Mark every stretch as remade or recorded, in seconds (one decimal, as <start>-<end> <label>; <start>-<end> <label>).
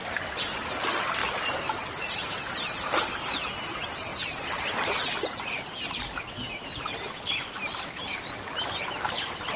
0.0-9.6 recorded